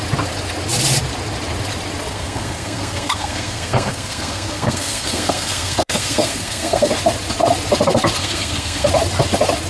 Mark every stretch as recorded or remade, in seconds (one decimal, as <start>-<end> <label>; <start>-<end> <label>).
0.0-2.1 recorded; 2.1-6.9 remade; 6.9-8.2 recorded; 8.2-8.9 remade; 8.9-9.7 recorded